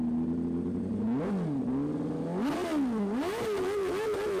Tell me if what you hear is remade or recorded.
recorded